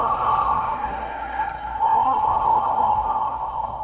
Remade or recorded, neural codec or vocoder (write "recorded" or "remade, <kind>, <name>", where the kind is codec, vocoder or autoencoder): remade, codec, SNAC